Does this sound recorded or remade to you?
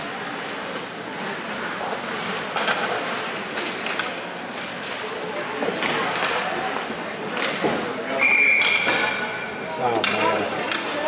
recorded